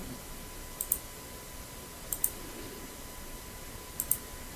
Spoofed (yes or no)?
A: no